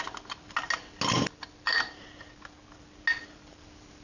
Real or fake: real